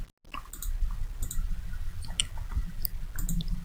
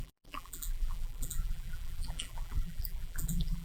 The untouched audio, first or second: first